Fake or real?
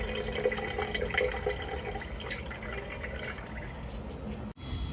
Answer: real